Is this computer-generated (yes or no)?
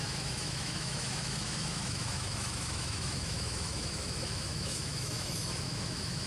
yes